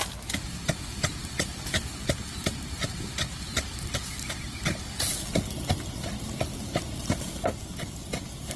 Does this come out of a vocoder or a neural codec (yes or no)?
no